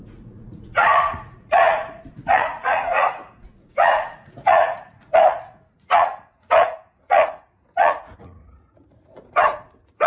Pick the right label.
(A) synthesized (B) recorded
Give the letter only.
A